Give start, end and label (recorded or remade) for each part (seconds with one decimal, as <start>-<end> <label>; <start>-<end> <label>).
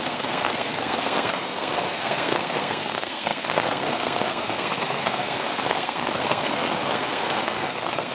0.0-8.1 remade